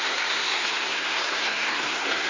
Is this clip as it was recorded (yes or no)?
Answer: no